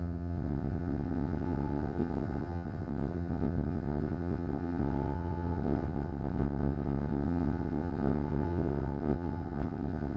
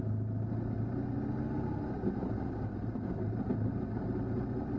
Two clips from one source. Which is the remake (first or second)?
first